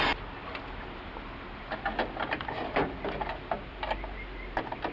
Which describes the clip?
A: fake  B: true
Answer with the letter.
B